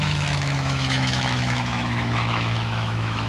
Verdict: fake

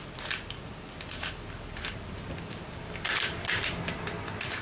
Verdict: real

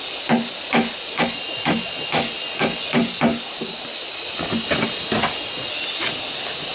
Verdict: real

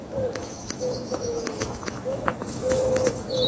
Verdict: fake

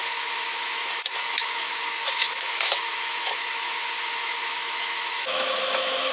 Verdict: fake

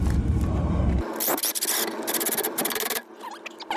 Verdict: real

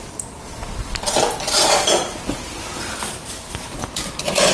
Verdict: real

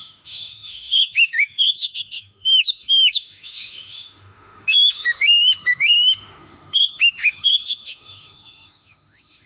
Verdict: fake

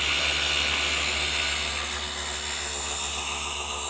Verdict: real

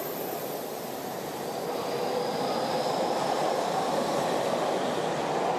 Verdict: real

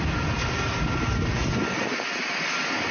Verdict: real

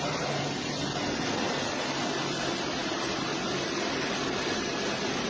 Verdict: real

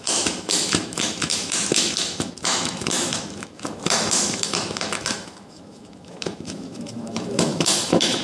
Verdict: fake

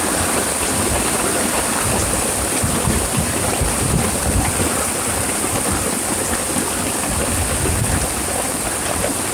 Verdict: real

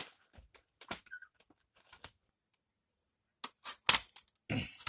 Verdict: real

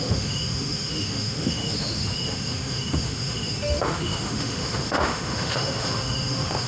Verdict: fake